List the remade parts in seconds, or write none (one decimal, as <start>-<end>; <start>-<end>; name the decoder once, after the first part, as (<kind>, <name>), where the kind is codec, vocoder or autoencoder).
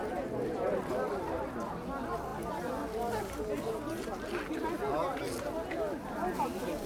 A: none